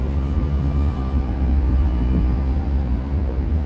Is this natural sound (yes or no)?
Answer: no